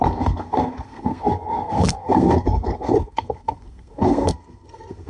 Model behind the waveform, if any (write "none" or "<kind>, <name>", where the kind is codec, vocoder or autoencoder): codec, SNAC